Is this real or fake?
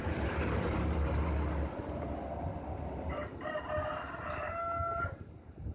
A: real